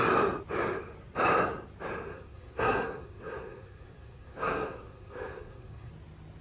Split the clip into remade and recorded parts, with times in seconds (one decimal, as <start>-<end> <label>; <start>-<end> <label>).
0.0-2.1 recorded; 2.1-5.9 remade; 5.9-6.4 recorded